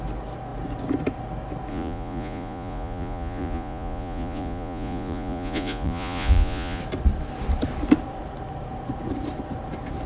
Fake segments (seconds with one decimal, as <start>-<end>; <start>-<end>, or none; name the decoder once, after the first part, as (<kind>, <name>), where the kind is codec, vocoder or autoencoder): 1.7-6.8 (vocoder, Vocos)